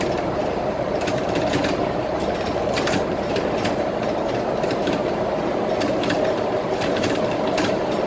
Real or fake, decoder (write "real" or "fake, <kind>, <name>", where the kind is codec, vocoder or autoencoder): fake, vocoder, BigVGAN v2